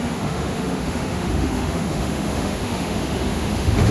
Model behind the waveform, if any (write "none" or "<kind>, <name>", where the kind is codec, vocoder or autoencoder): autoencoder, DAC-VAE